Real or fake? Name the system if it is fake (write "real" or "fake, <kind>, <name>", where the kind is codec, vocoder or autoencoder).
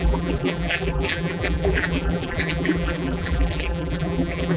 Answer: fake, vocoder, BigVGAN v2